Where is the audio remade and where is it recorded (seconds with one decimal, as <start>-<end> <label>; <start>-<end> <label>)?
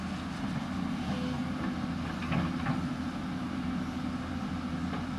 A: 0.0-5.2 recorded